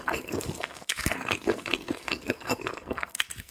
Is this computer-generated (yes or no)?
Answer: yes